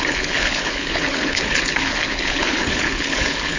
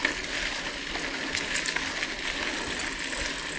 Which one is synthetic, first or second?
first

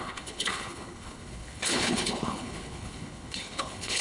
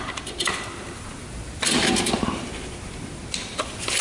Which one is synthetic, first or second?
first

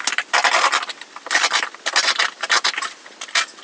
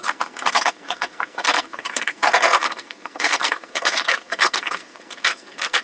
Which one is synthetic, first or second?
second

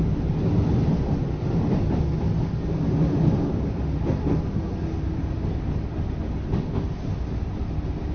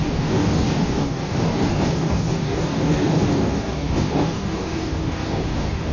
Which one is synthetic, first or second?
second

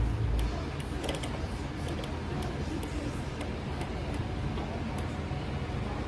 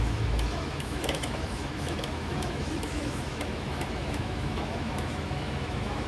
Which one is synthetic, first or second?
second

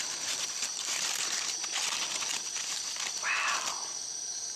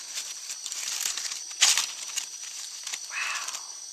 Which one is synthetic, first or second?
first